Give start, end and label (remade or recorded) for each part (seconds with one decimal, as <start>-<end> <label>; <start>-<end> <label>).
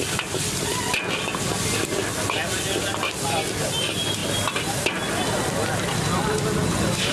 0.0-7.1 recorded